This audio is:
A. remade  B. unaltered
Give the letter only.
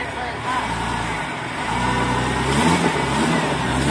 A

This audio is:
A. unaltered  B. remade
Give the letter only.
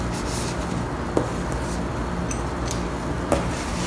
A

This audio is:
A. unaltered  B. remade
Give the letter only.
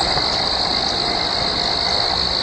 A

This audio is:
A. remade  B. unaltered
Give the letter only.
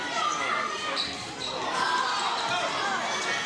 B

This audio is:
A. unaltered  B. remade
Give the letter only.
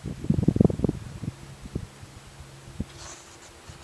A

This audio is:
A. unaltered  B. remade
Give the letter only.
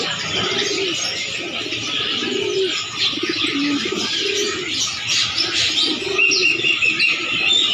A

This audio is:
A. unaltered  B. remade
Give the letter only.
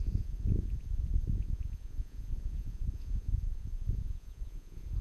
B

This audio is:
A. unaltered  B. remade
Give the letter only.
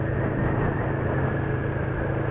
A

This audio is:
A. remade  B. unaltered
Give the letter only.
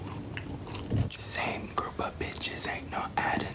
A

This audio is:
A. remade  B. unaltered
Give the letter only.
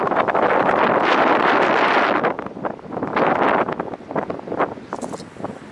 B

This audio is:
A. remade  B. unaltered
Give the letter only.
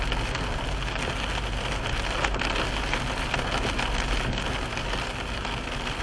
B